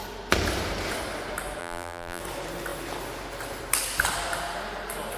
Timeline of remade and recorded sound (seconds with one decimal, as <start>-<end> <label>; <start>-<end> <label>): 0.0-1.6 recorded; 1.6-2.2 remade; 2.2-5.2 recorded